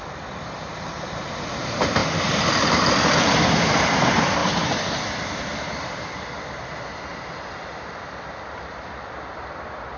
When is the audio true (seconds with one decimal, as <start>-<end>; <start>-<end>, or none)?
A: 4.4-5.0